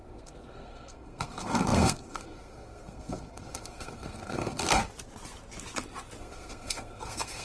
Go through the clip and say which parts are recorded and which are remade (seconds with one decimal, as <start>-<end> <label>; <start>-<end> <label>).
0.0-4.8 remade; 4.8-6.2 recorded; 6.2-7.4 remade